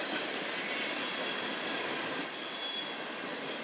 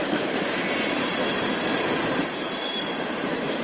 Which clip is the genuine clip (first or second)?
first